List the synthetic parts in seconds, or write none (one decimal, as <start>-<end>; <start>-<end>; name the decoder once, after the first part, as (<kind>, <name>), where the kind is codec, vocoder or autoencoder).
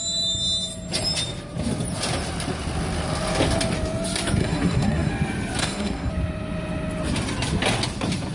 4.4-5.1 (codec, SNAC); 5.6-6.1